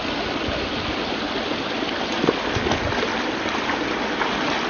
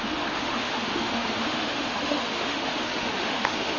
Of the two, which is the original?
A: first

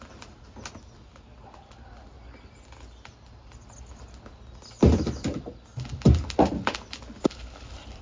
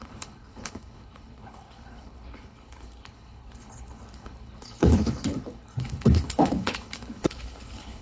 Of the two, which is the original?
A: first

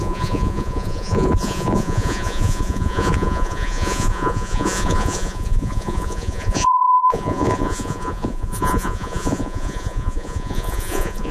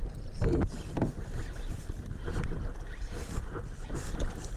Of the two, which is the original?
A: second